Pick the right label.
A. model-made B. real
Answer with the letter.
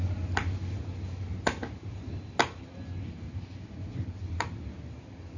B